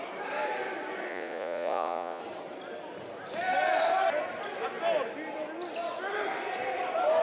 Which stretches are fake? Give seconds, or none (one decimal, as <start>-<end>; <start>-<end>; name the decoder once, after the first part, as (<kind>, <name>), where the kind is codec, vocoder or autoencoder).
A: 1.1-2.2 (vocoder, Vocos)